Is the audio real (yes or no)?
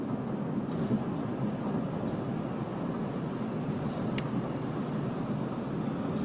yes